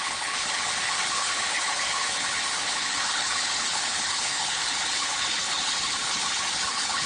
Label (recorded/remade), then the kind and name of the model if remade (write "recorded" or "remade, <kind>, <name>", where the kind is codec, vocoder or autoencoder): remade, codec, HILCodec